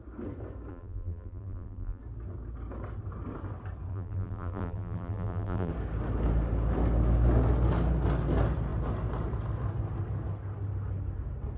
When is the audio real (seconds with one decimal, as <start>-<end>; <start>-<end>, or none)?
0.0-0.7; 2.0-3.9; 5.7-11.6